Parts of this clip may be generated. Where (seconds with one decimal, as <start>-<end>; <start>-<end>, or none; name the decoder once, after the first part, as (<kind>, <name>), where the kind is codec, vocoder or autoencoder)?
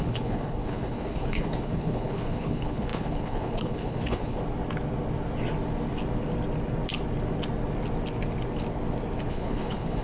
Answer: 0.0-4.4 (codec, HILCodec); 9.3-10.0